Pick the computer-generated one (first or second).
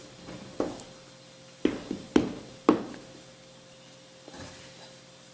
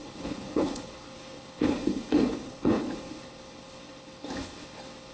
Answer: second